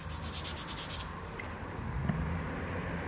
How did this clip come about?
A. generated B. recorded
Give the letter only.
B